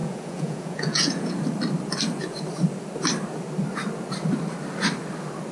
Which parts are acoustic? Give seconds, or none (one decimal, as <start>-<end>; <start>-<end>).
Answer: 1.4-5.5